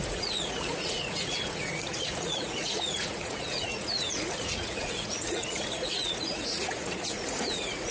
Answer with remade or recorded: remade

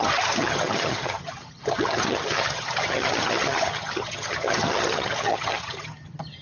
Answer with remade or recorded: remade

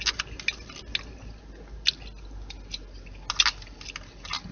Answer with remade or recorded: recorded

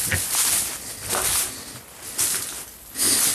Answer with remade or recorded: recorded